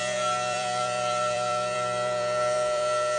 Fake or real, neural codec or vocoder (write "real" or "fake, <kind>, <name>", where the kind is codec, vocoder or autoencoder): fake, vocoder, BigVGAN v2